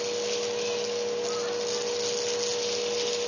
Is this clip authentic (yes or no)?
yes